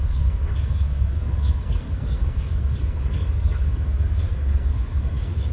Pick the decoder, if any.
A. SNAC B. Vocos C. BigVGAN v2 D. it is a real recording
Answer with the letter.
A